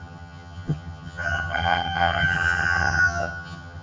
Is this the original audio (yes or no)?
no